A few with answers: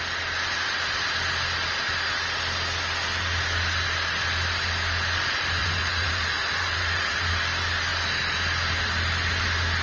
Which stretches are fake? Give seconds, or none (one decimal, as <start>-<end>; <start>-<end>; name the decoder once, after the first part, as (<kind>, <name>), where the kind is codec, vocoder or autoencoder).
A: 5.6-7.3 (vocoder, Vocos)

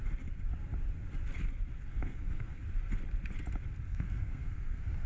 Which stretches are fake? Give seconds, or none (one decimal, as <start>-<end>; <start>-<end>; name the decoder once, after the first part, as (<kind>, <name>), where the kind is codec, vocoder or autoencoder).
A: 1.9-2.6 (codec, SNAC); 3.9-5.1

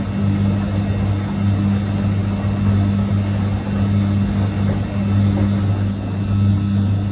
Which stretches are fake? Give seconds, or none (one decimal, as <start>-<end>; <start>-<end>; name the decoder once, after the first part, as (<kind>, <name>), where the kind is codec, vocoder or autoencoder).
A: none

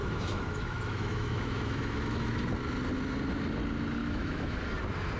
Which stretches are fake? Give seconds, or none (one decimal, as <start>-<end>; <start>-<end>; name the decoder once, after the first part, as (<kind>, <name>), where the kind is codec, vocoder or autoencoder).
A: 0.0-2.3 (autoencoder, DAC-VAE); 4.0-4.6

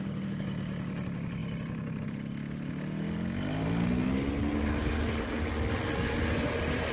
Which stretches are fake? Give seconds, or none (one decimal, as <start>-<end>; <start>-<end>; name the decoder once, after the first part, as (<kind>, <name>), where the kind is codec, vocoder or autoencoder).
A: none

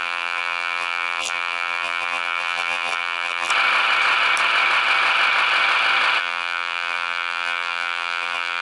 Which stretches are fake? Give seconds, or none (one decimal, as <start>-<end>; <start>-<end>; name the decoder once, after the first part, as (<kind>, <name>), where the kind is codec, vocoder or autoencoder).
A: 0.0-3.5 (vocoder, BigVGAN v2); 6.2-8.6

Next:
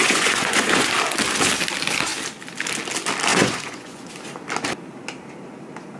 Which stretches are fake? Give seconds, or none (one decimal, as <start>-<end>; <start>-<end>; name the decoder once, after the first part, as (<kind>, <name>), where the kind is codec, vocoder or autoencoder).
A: 0.0-0.9 (vocoder, Vocos); 3.3-4.1

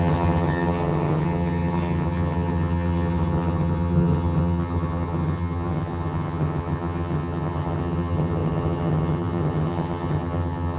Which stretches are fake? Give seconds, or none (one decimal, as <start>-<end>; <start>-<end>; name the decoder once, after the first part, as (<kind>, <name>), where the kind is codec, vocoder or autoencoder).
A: 0.0-10.8 (vocoder, HiFi-GAN)